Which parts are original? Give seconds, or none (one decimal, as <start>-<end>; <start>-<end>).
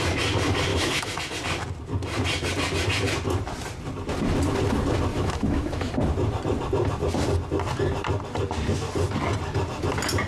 0.0-0.7; 1.2-5.1; 5.9-10.3